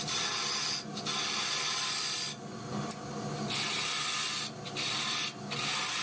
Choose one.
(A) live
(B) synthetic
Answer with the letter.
A